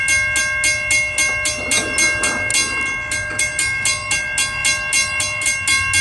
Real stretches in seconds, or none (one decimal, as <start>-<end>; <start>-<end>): 0.0-6.0